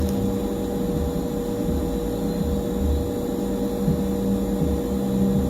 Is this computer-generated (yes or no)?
no